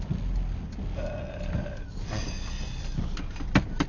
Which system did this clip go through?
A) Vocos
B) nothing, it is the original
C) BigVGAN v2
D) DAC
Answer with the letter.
B